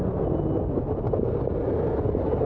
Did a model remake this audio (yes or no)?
no